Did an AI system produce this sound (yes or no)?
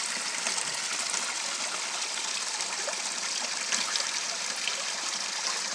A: no